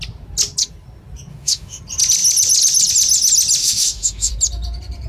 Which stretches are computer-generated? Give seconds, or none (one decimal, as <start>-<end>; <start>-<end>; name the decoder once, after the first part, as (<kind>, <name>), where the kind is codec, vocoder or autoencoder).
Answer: 1.3-1.8 (autoencoder, DAC-VAE); 3.6-4.3